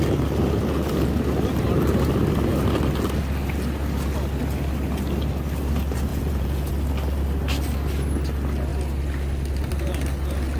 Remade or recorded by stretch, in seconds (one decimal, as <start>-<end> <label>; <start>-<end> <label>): 0.0-6.1 recorded; 6.1-6.7 remade; 6.7-10.6 recorded